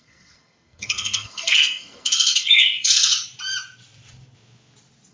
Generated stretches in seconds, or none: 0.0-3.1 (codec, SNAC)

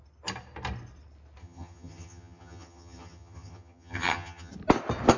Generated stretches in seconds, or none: 1.4-4.5 (vocoder, HiFi-GAN)

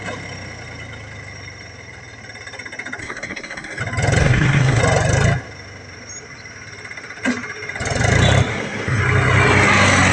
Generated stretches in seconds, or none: 3.0-3.8 (codec, SNAC); 4.2-4.8; 8.5-9.0